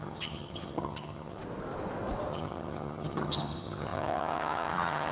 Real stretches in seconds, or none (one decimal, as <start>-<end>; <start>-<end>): 1.4-2.3